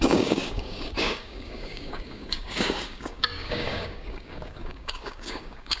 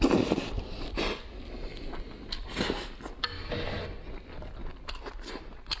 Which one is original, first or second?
second